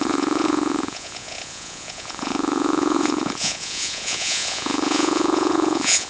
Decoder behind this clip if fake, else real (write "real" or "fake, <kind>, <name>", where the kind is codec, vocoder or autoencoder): fake, vocoder, Vocos